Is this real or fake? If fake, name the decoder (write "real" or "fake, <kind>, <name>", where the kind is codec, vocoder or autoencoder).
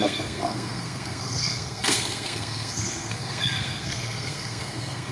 fake, codec, SNAC